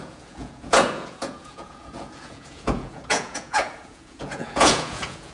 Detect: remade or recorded remade